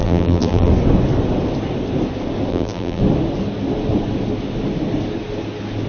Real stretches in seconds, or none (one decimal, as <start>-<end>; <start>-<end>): 0.7-2.5; 3.0-5.9